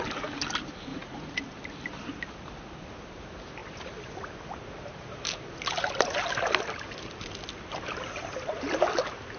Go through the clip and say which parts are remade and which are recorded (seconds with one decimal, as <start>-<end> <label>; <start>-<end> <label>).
0.0-0.9 recorded; 0.9-1.4 remade; 1.4-9.4 recorded